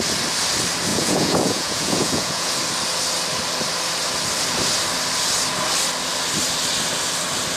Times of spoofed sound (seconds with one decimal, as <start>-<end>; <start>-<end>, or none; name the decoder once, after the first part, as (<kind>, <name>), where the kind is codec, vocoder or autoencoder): 0.9-2.5 (vocoder, Vocos)